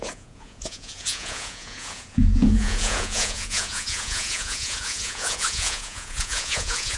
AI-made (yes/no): yes